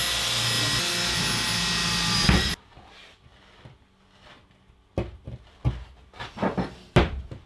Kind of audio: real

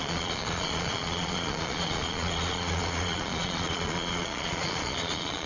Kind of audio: fake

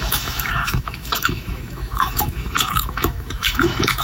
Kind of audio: fake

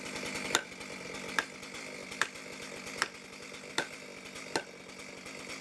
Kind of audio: real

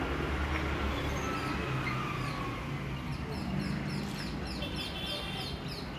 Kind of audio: real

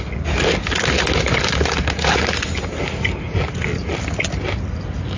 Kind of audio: real